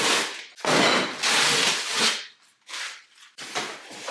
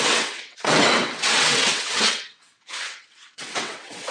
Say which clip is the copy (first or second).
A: second